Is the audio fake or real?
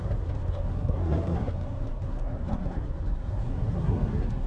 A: fake